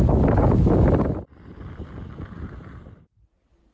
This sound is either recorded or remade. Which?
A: recorded